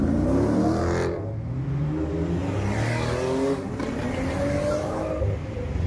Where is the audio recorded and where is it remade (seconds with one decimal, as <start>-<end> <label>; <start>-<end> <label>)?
0.0-5.9 recorded